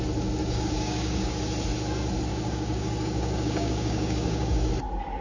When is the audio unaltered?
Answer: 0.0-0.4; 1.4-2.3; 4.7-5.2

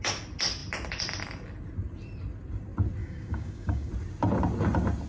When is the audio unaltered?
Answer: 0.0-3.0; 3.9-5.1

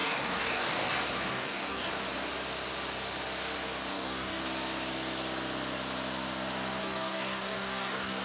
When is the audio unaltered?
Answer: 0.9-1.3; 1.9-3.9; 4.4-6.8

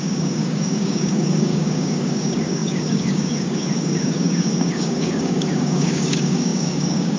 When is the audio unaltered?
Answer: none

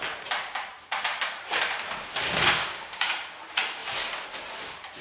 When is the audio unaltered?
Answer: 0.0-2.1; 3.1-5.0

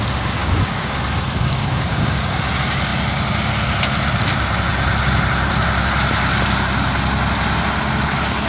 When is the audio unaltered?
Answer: 0.0-0.4; 1.0-1.4; 2.4-8.5

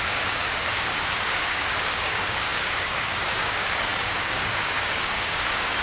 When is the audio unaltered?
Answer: none

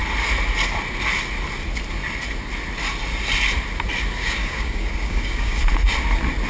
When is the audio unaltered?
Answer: 0.0-4.2; 5.6-6.5